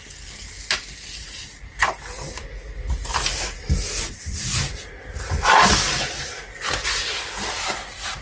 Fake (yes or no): no